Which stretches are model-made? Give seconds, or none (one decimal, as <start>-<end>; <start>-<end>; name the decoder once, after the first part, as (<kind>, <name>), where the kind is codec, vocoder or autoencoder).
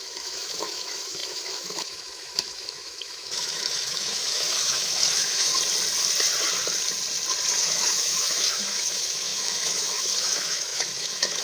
0.0-5.5 (autoencoder, DAC-VAE); 7.6-11.4